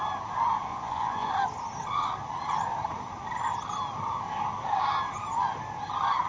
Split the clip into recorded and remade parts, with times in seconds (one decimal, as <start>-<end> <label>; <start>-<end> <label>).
0.0-0.7 recorded; 0.7-1.3 remade; 1.3-6.3 recorded